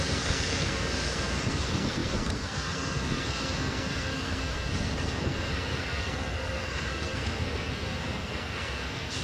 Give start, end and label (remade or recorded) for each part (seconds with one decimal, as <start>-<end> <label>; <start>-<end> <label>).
0.0-9.2 remade

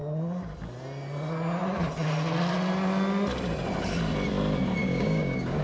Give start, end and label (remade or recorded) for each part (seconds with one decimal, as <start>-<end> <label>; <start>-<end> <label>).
0.0-4.8 recorded; 4.8-5.6 remade

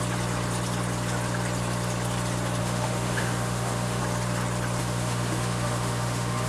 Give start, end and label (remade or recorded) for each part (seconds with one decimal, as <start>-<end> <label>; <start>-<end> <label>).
0.0-2.6 recorded; 2.6-4.0 remade; 4.0-4.8 recorded; 4.8-6.5 remade